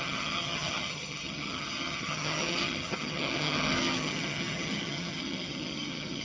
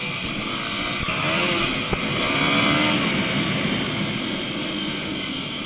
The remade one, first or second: first